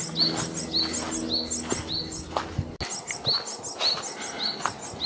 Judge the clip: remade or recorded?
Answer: recorded